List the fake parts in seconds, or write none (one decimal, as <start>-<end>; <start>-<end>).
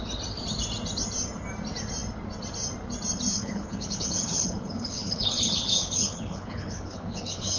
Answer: 3.3-7.6